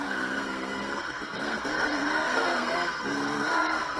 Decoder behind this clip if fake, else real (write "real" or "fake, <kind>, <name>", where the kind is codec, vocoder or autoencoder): fake, codec, SNAC